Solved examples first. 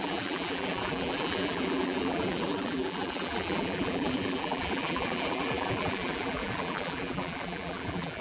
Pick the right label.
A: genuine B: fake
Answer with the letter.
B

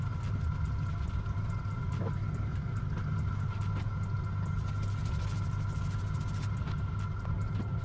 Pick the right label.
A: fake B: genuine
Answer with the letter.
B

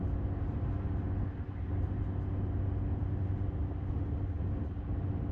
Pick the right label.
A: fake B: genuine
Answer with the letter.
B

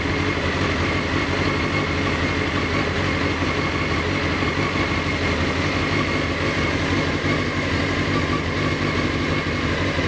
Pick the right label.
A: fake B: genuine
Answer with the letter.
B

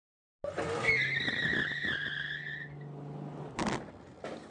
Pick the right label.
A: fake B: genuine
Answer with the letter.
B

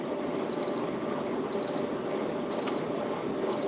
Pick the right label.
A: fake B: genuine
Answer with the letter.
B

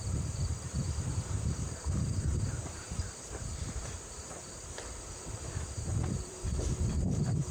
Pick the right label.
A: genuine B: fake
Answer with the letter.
B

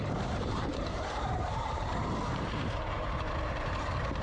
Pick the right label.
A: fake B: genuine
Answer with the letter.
A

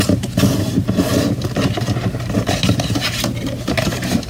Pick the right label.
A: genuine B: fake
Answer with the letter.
B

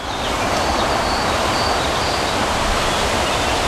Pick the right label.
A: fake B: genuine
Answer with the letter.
A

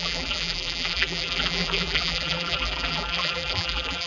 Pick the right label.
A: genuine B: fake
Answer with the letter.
B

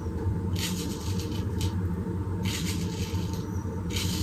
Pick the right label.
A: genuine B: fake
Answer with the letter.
B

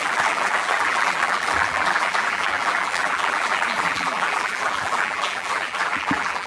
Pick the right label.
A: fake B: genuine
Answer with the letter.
A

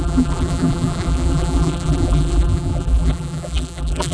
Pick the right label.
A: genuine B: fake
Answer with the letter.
B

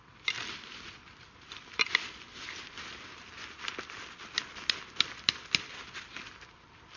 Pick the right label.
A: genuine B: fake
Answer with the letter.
A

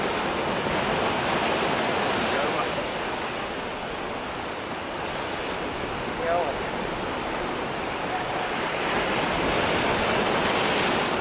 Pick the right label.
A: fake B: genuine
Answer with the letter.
B